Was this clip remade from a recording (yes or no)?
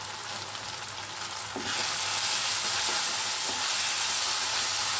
no